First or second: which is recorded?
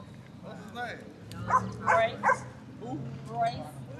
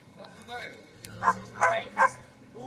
first